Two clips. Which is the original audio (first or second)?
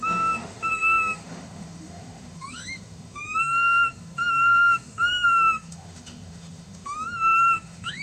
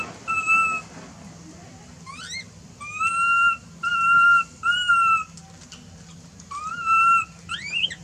second